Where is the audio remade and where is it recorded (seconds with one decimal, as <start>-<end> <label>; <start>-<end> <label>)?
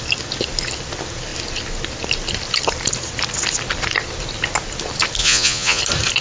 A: 0.0-5.2 recorded; 5.2-5.8 remade; 5.8-6.2 recorded